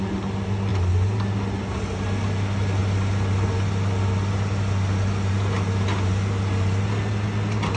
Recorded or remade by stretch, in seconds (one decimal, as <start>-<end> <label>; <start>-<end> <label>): 0.0-7.8 recorded